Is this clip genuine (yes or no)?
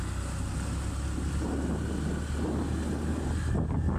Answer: yes